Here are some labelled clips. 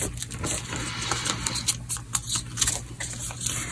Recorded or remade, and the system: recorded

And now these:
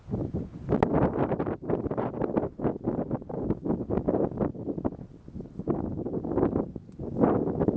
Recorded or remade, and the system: recorded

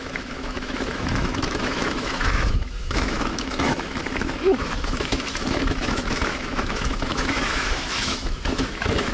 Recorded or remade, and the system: remade, autoencoder, DAC-VAE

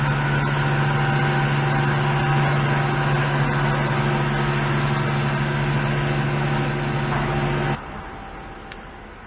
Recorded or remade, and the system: recorded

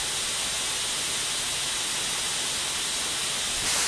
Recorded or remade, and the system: recorded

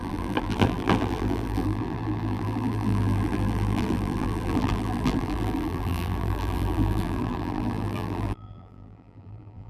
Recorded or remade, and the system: remade, vocoder, BigVGAN v2